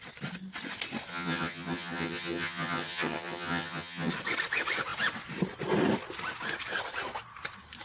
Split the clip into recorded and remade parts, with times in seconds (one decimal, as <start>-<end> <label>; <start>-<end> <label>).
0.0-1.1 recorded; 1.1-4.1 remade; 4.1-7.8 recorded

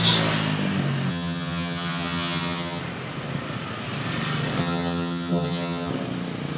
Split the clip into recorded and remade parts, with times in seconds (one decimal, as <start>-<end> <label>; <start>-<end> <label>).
0.0-1.1 recorded; 1.1-2.8 remade; 2.8-4.6 recorded; 4.6-5.9 remade; 5.9-6.6 recorded

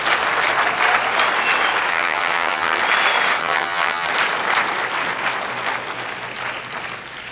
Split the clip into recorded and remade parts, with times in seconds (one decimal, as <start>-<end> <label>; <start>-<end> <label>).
0.0-1.9 recorded; 1.9-2.8 remade; 2.8-3.4 recorded; 3.4-4.1 remade; 4.1-7.3 recorded

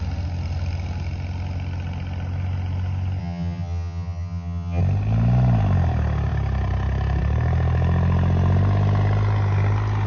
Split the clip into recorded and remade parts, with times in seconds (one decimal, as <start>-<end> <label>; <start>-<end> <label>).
0.0-3.2 recorded; 3.2-4.8 remade; 4.8-10.1 recorded